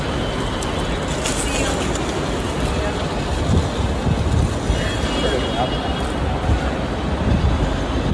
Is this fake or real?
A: real